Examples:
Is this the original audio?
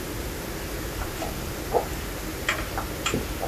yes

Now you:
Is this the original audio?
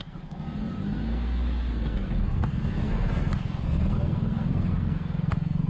no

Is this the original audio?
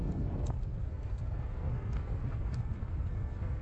no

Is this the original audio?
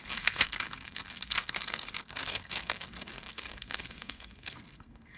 no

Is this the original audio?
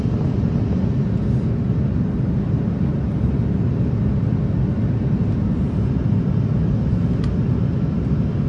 yes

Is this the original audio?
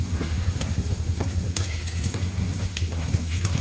no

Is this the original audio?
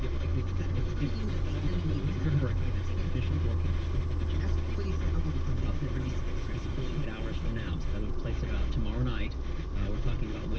yes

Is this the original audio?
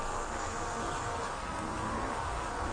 no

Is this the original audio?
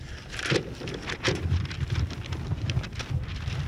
yes